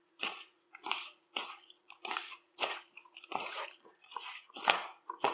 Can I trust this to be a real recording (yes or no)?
no